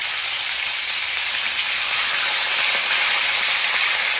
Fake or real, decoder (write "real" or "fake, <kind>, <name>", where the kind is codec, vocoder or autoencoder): fake, vocoder, BigVGAN v2